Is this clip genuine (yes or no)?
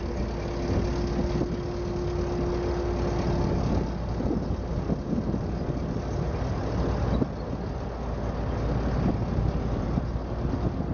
yes